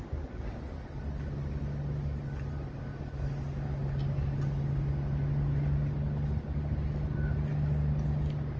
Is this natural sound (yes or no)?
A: yes